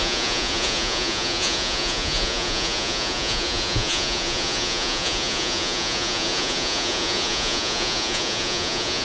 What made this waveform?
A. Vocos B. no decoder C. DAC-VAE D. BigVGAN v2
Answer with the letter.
A